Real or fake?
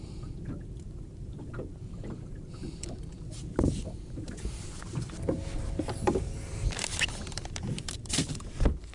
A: fake